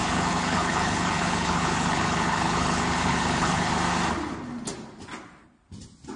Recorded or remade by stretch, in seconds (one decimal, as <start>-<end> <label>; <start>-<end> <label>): 0.0-3.7 remade; 3.7-6.2 recorded